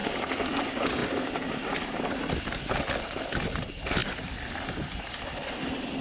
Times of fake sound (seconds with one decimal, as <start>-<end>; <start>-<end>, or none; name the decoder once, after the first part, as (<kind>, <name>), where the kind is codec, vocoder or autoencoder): 0.0-0.6 (vocoder, BigVGAN v2)